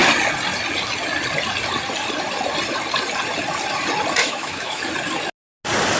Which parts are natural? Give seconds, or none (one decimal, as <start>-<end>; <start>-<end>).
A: 0.0-4.2; 4.8-6.0